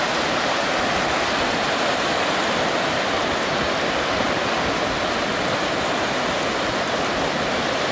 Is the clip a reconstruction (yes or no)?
no